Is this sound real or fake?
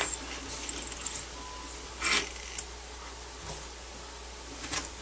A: real